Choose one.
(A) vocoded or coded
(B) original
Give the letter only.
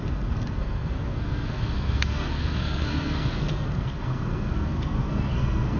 A